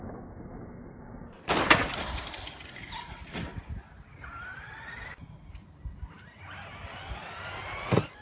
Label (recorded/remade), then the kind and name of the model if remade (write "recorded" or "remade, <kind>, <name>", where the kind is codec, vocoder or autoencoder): recorded